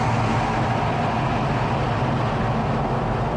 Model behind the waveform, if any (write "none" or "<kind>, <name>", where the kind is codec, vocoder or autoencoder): none